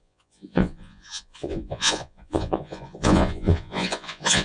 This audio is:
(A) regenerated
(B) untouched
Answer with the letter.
A